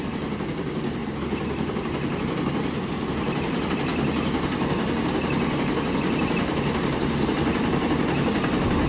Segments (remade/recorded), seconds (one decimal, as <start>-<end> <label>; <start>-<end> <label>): 0.0-8.9 recorded